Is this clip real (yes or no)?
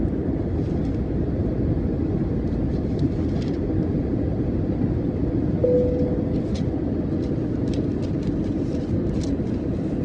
yes